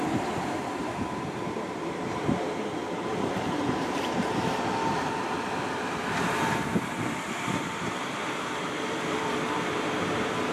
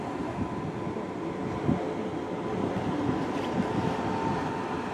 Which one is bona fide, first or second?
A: second